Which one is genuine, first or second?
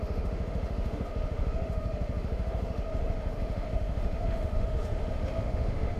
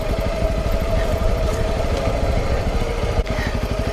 second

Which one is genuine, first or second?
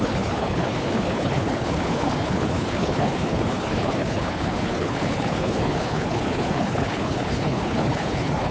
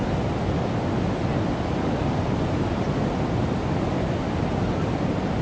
second